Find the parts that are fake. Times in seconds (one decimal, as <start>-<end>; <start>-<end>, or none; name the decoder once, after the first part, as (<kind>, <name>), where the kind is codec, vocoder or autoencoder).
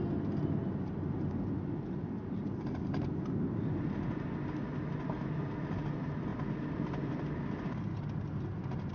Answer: 6.3-7.6 (vocoder, BigVGAN v2)